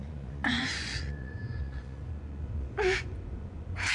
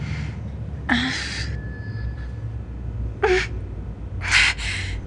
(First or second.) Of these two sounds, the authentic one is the second